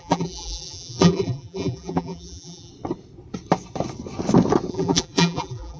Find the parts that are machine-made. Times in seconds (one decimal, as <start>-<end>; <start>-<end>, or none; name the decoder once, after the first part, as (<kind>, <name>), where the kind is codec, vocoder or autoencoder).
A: 0.0-2.7 (vocoder, BigVGAN v2); 4.7-5.8